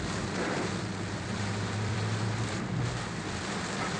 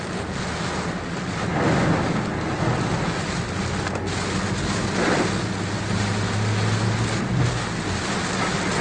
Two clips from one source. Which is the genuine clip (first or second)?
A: second